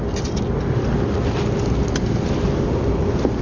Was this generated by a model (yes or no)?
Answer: no